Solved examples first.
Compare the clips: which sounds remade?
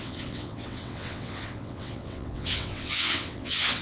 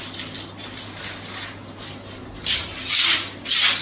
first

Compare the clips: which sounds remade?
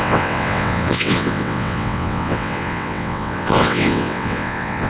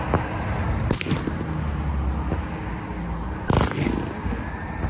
first